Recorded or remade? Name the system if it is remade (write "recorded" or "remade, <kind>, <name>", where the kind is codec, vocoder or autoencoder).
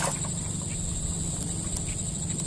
recorded